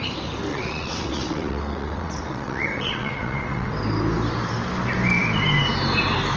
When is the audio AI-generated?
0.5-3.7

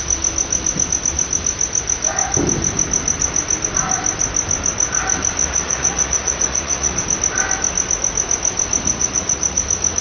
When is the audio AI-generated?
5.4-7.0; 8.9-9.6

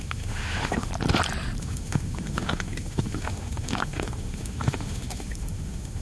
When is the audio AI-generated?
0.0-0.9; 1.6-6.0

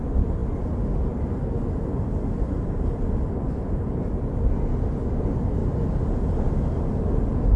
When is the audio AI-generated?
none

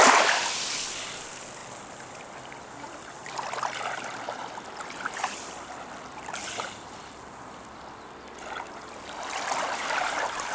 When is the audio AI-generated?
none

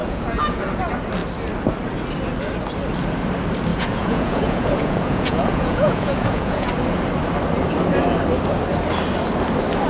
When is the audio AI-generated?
0.0-0.6; 3.7-6.7